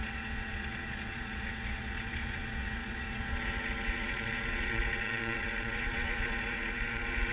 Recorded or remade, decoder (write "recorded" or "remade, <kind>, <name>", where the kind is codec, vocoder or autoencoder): remade, vocoder, Vocos